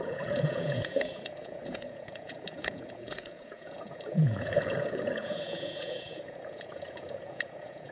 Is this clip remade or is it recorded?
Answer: remade